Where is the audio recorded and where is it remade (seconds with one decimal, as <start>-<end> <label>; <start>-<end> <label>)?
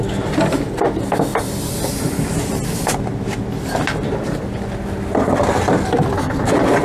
0.0-1.3 recorded; 1.3-4.7 remade; 4.7-5.2 recorded; 5.2-6.8 remade